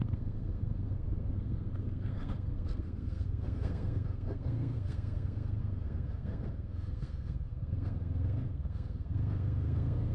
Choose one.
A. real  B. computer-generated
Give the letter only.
B